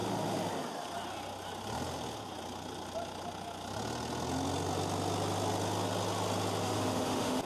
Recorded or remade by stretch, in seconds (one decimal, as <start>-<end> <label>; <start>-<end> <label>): 0.0-6.6 recorded; 6.6-7.4 remade